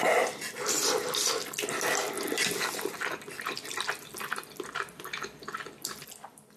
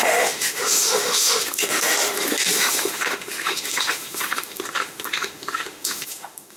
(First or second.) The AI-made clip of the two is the second